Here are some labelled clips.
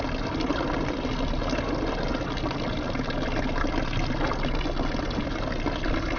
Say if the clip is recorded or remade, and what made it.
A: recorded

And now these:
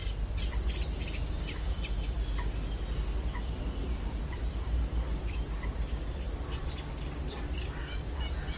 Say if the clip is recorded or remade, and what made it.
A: recorded